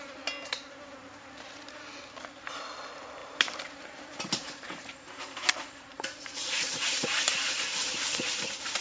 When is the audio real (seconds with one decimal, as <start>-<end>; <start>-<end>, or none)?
0.0-3.2; 8.3-8.8